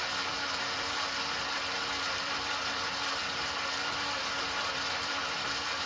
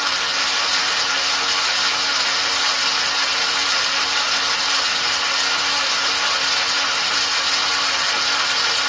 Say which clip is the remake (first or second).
first